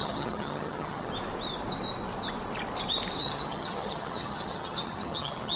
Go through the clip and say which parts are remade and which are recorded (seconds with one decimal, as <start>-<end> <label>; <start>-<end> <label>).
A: 0.0-1.1 remade; 1.1-3.2 recorded; 3.2-5.6 remade